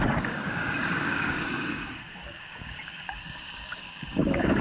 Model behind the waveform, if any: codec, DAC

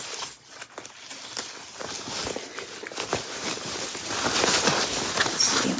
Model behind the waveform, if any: none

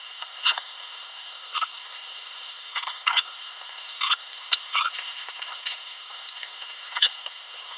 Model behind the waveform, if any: codec, SNAC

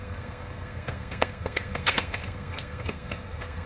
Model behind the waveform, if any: codec, SNAC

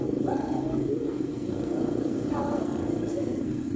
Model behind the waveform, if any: codec, SNAC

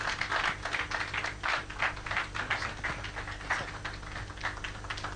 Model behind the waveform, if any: none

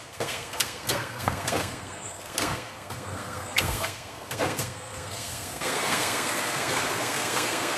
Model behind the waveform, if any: codec, SNAC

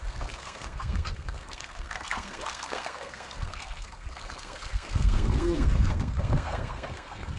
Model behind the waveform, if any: codec, SNAC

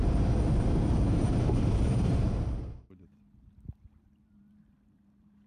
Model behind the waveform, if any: vocoder, BigVGAN v2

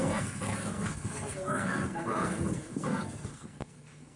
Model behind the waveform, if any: codec, SNAC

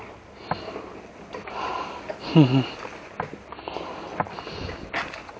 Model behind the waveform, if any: none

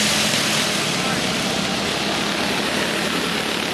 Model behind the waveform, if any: none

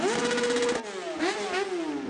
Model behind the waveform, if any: none